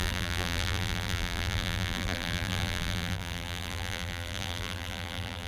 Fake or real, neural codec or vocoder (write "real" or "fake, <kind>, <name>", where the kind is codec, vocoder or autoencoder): fake, vocoder, BigVGAN v2